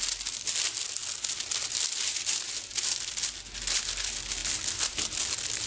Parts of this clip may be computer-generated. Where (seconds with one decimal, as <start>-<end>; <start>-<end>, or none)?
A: none